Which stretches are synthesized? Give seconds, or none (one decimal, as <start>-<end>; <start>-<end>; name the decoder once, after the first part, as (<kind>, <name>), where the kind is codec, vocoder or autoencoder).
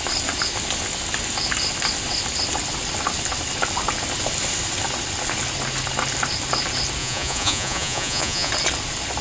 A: 7.0-8.5 (vocoder, Vocos)